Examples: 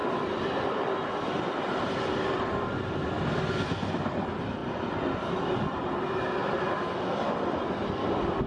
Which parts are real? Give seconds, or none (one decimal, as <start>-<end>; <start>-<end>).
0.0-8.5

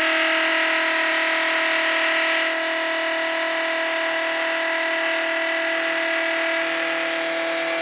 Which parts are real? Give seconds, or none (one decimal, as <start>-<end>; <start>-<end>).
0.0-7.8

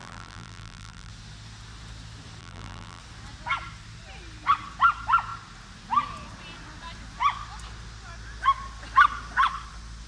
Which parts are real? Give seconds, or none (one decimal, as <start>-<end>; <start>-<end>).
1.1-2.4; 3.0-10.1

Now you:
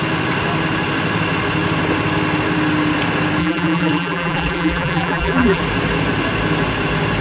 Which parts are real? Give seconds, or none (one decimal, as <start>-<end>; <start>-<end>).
0.0-3.4; 5.6-7.2